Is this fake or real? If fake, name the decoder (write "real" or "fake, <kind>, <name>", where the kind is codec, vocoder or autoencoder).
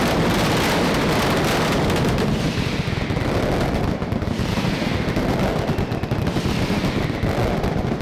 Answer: real